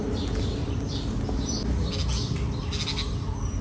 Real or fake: real